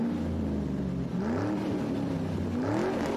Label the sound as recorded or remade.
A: recorded